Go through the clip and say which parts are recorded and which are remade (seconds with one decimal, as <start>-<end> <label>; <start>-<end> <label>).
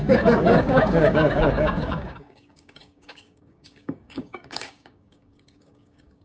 0.0-6.2 remade